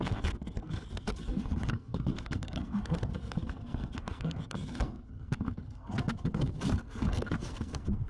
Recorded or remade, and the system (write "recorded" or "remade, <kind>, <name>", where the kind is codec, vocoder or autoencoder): remade, codec, SNAC